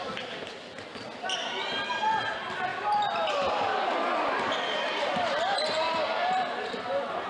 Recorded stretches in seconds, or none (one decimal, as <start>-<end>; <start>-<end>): 0.0-2.7